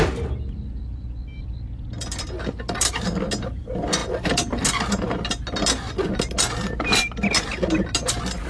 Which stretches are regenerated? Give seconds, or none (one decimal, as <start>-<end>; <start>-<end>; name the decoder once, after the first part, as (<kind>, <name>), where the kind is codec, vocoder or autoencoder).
none